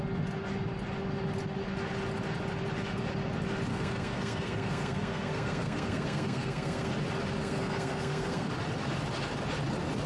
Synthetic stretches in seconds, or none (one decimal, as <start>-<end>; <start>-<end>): 3.7-6.9; 7.4-8.5